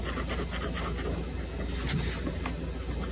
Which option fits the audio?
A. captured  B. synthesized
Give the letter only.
A